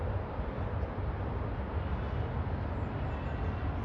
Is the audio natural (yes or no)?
yes